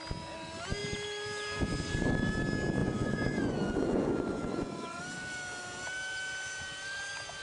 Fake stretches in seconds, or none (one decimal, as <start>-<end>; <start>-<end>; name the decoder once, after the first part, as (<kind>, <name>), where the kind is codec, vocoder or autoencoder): 2.8-5.0 (vocoder, Vocos)